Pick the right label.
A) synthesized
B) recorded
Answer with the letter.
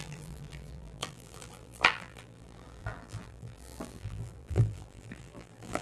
A